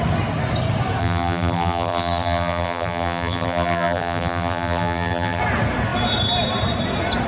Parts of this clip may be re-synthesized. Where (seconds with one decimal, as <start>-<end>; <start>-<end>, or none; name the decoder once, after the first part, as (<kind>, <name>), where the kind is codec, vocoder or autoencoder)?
1.0-5.4 (vocoder, BigVGAN v2)